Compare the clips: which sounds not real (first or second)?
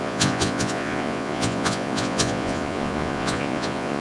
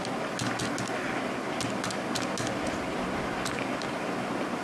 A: first